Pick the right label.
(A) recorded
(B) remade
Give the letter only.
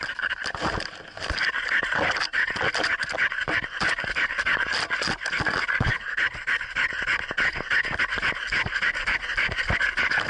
A